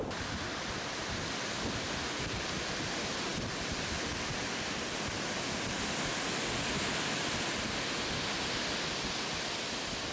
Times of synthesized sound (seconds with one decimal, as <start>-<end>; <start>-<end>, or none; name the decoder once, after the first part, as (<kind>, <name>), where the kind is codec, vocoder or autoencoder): none